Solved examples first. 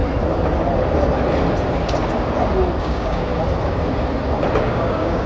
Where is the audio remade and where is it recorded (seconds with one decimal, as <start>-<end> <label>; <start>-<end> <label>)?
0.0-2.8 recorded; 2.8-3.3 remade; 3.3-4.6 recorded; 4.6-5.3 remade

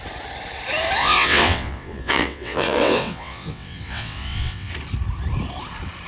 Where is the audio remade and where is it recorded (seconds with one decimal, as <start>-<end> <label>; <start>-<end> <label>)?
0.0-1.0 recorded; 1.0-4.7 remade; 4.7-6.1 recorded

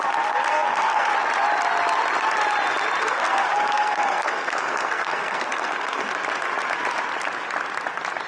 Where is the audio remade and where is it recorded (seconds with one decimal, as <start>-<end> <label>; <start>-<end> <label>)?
0.0-0.5 recorded; 0.5-1.1 remade; 1.1-3.0 recorded; 3.0-6.1 remade; 6.1-8.3 recorded

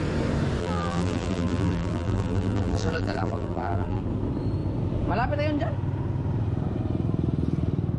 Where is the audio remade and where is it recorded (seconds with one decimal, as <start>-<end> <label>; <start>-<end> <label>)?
0.0-0.6 recorded; 0.6-4.0 remade; 4.0-8.0 recorded

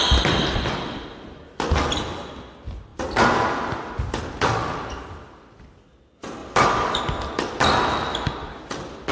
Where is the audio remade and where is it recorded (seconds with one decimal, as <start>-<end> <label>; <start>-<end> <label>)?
0.0-6.4 recorded; 6.4-7.0 remade; 7.0-9.1 recorded

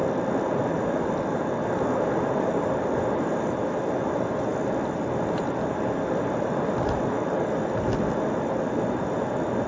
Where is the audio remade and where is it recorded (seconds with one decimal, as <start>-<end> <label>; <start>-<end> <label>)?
0.0-9.7 recorded

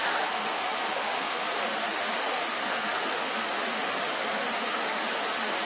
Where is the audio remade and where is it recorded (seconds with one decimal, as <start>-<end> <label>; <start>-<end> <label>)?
0.0-5.6 remade

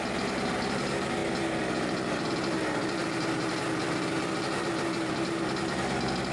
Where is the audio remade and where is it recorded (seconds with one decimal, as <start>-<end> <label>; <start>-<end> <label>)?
0.0-6.3 recorded